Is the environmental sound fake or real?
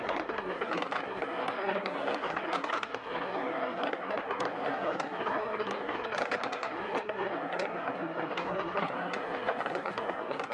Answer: fake